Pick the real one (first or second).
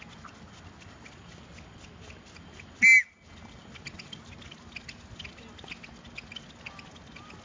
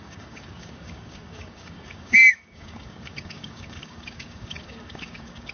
first